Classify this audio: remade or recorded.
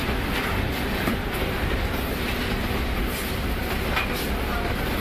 recorded